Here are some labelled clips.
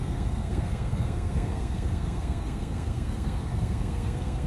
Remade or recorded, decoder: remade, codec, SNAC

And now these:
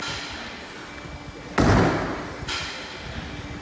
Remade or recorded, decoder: recorded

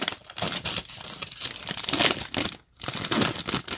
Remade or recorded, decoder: recorded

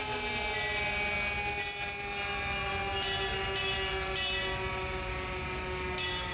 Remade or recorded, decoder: recorded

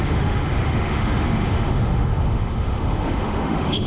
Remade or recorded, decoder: remade, autoencoder, DAC-VAE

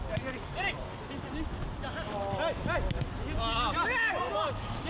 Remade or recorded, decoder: recorded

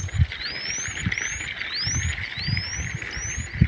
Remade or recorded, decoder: recorded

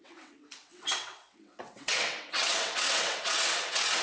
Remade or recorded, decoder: remade, vocoder, WaveNeXt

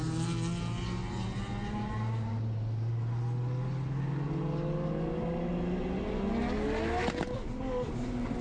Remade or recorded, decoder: recorded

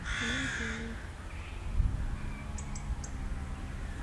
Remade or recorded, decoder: recorded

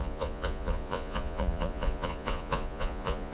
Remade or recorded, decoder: remade, vocoder, Vocos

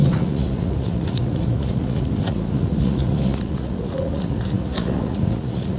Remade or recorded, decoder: remade, vocoder, Vocos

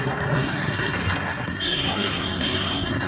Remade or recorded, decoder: remade, codec, SNAC